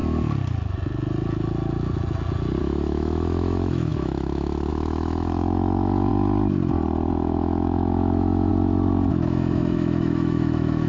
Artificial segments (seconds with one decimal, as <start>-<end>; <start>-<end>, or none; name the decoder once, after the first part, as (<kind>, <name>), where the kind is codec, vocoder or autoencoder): 2.6-6.1 (autoencoder, DAC-VAE); 7.1-8.5; 9.1-10.9